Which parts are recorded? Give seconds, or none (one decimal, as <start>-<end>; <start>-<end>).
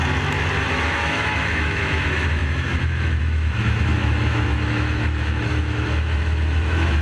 0.0-0.7